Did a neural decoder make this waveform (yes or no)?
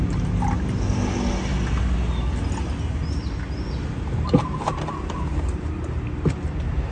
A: no